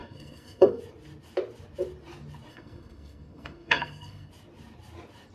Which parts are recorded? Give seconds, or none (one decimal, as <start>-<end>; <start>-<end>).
0.8-2.5; 4.3-5.3